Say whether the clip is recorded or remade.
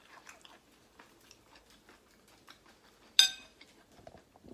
recorded